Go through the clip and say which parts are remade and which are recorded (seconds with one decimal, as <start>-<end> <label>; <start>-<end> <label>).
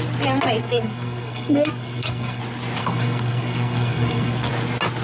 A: 0.0-0.6 recorded; 0.6-2.4 remade; 2.4-2.8 recorded; 2.8-4.5 remade; 4.5-5.0 recorded